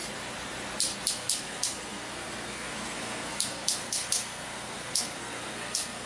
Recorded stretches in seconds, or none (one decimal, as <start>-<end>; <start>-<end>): 0.0-1.1